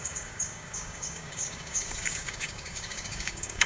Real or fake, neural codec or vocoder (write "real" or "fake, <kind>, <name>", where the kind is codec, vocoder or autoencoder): fake, codec, DAC